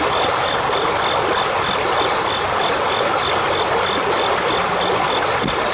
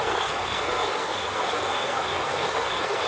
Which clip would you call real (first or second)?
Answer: first